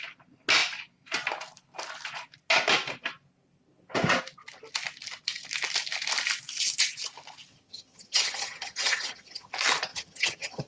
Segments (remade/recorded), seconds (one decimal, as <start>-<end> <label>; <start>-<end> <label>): 0.0-7.5 recorded; 7.5-9.5 remade; 9.5-9.9 recorded; 9.9-10.7 remade